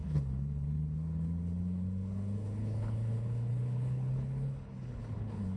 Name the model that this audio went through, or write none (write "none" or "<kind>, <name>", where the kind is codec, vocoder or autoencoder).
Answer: codec, HILCodec